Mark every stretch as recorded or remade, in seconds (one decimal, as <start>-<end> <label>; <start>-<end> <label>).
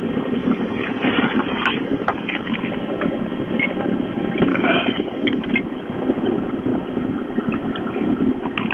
0.0-0.4 recorded; 0.4-2.6 remade; 2.6-4.5 recorded; 4.5-5.5 remade; 5.5-8.7 recorded